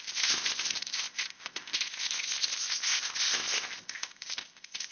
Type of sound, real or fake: fake